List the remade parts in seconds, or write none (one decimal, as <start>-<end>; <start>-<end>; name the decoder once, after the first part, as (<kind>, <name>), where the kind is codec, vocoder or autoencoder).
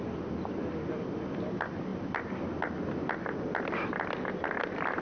none